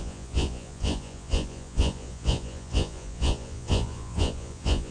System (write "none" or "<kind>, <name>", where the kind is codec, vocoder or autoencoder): vocoder, Vocos